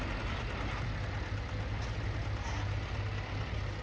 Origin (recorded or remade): recorded